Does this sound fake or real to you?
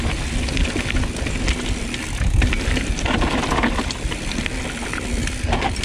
real